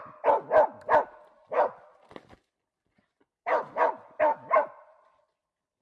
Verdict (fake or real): real